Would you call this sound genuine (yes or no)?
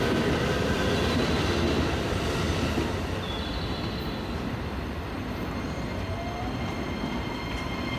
yes